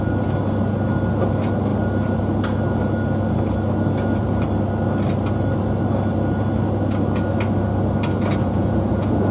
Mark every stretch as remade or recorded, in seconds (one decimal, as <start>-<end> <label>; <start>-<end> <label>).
0.0-8.4 recorded; 8.4-9.3 remade